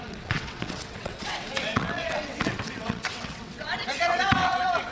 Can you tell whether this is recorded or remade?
remade